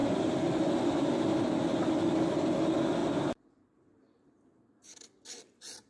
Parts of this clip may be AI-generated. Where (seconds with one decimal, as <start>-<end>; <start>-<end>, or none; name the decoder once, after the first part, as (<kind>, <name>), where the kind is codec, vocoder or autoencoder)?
none